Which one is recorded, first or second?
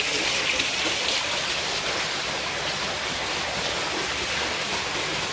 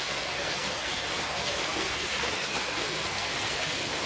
first